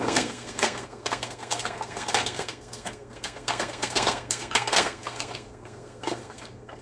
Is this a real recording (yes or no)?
no